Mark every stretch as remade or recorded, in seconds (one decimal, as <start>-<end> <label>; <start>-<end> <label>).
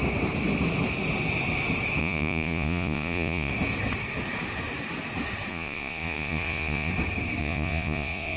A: 0.0-2.0 recorded; 2.0-3.5 remade; 3.5-5.5 recorded; 5.5-6.9 remade; 6.9-7.4 recorded; 7.4-8.4 remade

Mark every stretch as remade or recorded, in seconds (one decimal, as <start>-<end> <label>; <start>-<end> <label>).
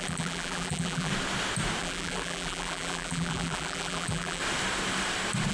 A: 0.0-1.1 remade; 1.1-1.8 recorded; 1.8-4.4 remade; 4.4-5.5 recorded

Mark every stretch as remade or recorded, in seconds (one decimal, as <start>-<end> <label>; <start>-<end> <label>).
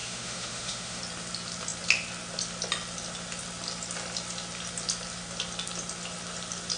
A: 0.0-1.0 remade; 1.0-6.8 recorded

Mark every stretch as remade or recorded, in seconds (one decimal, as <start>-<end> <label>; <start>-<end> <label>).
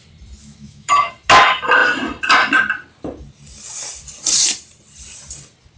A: 0.0-0.4 recorded; 0.4-1.1 remade; 1.1-5.8 recorded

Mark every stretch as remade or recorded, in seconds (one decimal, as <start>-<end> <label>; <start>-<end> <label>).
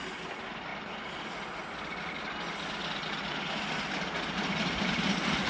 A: 0.0-5.5 recorded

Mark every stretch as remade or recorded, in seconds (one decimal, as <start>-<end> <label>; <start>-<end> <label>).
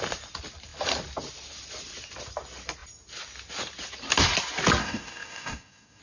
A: 0.0-4.8 recorded; 4.8-6.0 remade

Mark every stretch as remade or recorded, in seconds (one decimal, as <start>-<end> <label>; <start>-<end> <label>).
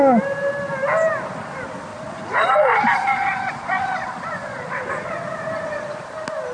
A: 0.0-1.9 recorded; 1.9-4.9 remade; 4.9-6.5 recorded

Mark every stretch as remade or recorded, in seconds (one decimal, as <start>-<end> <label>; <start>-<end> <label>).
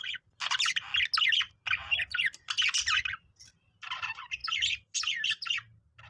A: 0.0-0.9 remade; 0.9-1.5 recorded; 1.5-6.1 remade